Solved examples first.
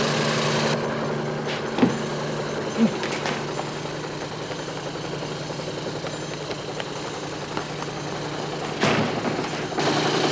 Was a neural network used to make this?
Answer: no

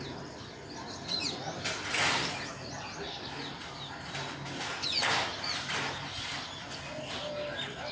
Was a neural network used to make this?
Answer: no